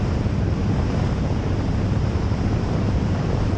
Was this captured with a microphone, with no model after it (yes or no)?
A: no